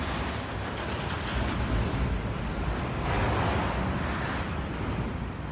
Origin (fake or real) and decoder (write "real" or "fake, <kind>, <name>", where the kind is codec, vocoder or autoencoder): real